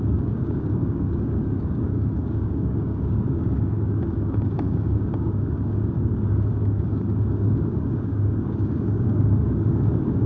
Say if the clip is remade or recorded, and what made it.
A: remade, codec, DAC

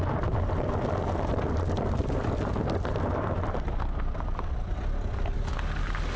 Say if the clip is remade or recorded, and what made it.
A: recorded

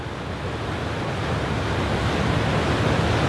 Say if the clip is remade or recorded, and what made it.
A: recorded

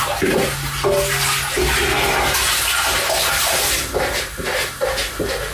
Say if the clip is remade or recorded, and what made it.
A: recorded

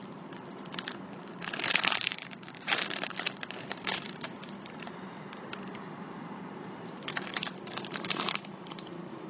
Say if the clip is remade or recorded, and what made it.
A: remade, vocoder, BigVGAN v2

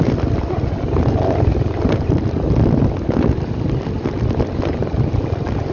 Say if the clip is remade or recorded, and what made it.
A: recorded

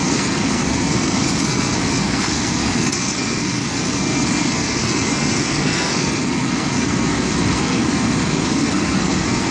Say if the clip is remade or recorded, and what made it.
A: remade, codec, SNAC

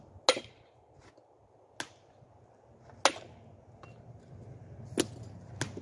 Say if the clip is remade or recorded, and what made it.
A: recorded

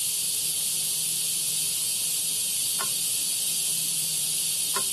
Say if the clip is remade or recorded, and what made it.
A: recorded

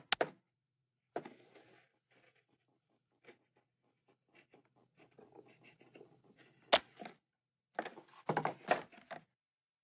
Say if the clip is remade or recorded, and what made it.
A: recorded